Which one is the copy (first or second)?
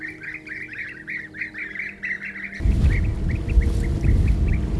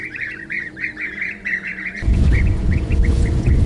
second